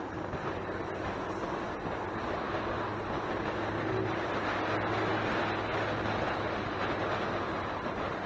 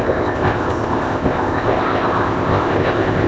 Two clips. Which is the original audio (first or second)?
first